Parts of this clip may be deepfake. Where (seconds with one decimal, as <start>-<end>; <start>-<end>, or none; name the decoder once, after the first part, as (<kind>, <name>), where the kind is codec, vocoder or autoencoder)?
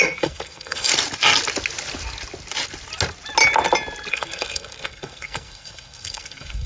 0.0-0.9 (codec, SNAC); 4.1-6.7